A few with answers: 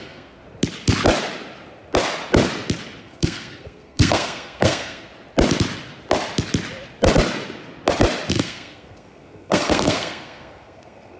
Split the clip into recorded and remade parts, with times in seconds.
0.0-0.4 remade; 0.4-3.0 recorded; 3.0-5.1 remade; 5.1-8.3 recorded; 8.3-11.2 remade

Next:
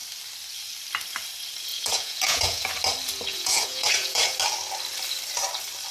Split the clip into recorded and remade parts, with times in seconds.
0.0-1.7 recorded; 1.7-2.7 remade; 2.7-3.3 recorded; 3.3-4.4 remade; 4.4-5.9 recorded

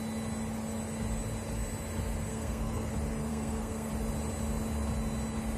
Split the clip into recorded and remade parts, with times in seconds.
0.0-2.3 recorded; 2.3-2.9 remade; 2.9-3.3 recorded; 3.3-3.9 remade; 3.9-5.6 recorded

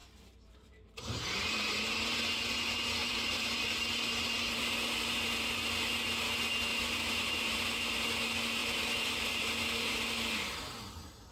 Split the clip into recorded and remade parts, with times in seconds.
0.0-1.8 remade; 1.8-3.0 recorded; 3.0-3.7 remade; 3.7-6.7 recorded; 6.7-7.7 remade; 7.7-8.6 recorded; 8.6-9.5 remade; 9.5-11.3 recorded

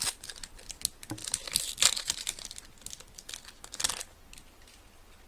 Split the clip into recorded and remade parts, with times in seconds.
0.0-5.3 recorded